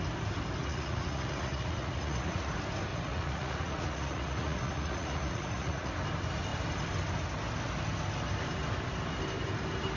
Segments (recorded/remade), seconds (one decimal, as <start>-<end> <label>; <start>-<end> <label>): 0.0-0.6 recorded; 0.6-2.5 remade; 2.5-2.9 recorded; 2.9-5.9 remade; 5.9-10.0 recorded